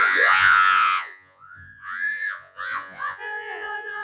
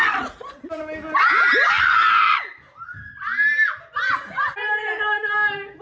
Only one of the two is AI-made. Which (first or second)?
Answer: first